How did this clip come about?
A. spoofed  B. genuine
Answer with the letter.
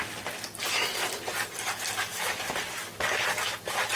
B